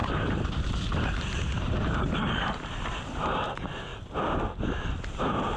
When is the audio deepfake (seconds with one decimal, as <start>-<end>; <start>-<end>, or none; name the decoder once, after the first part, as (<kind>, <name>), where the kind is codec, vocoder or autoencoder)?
0.0-2.5 (vocoder, BigVGAN v2)